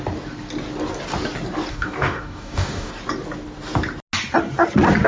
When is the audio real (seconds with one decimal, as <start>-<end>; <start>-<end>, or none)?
0.0-1.7; 2.9-5.1